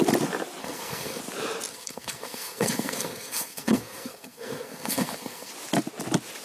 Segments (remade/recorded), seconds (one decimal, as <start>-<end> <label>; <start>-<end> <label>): 0.0-0.6 recorded; 0.6-1.2 remade; 1.2-1.7 recorded; 1.7-5.5 remade; 5.5-6.4 recorded